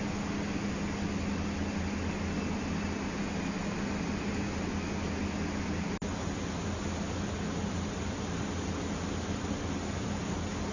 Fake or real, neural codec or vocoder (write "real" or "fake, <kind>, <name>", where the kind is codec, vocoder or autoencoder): real